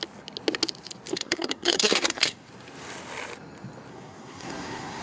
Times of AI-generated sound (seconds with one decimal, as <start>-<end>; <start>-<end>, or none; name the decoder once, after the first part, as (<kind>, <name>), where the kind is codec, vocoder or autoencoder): 1.1-2.5 (codec, SNAC); 3.9-5.0